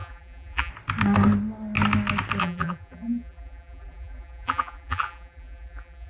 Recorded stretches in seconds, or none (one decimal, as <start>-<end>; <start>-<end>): 0.7-2.4